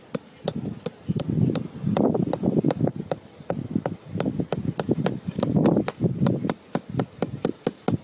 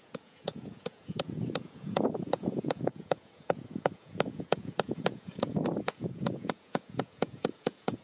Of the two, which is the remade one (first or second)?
second